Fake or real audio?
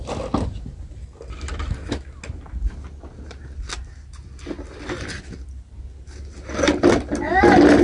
real